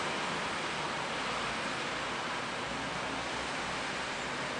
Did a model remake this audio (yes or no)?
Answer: no